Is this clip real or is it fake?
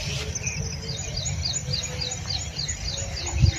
real